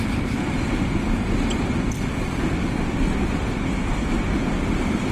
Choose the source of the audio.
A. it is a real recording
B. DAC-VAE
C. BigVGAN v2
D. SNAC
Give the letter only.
A